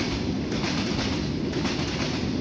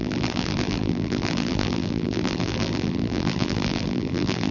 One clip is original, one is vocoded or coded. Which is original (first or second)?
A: first